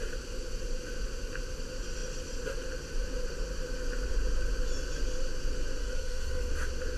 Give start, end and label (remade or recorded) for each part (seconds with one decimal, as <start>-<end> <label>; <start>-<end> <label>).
0.0-5.8 recorded; 5.8-6.5 remade; 6.5-7.0 recorded